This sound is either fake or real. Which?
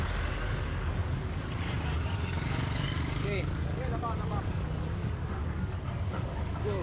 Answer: fake